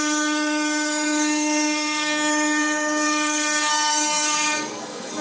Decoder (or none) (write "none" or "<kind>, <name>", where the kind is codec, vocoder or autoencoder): codec, SNAC